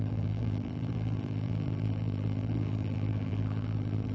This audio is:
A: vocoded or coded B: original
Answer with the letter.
A